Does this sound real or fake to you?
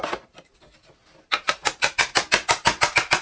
real